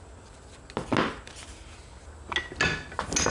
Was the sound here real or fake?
real